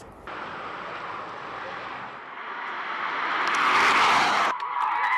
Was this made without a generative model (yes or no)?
yes